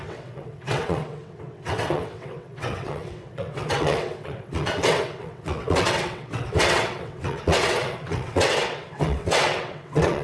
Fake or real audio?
fake